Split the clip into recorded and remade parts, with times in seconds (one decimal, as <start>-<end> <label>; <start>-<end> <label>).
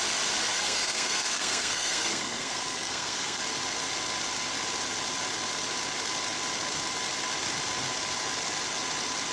0.0-0.5 recorded; 0.5-3.4 remade; 3.4-9.3 recorded